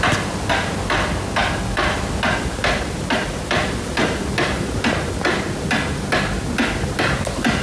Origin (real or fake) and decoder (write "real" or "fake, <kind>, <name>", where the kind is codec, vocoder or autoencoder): real